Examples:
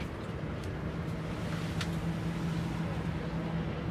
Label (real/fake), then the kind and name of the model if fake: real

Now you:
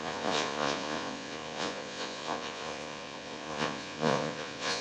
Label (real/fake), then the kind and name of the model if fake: fake, vocoder, Vocos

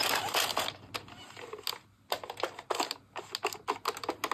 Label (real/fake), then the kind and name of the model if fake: real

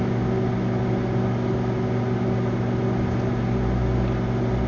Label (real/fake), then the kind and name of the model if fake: real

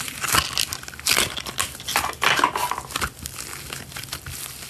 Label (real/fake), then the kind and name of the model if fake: real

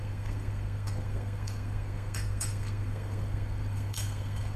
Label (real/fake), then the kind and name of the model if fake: fake, codec, SNAC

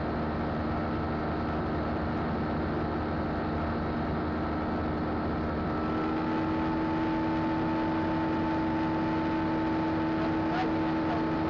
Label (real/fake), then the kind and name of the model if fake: real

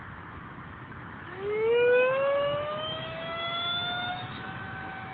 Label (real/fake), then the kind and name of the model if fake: fake, autoencoder, DAC-VAE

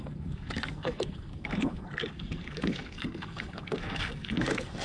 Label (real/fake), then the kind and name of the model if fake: fake, codec, SNAC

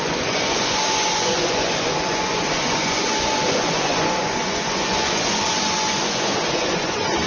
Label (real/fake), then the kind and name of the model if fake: fake, vocoder, Vocos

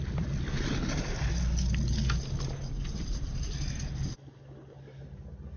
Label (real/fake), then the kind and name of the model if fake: real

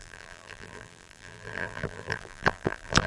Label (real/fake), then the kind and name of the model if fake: fake, vocoder, BigVGAN v2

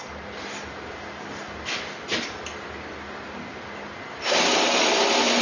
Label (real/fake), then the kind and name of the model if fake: real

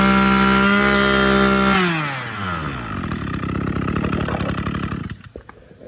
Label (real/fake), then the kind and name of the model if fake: real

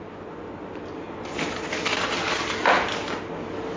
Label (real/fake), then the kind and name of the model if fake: real